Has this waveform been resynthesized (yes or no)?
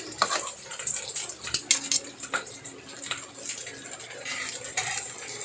no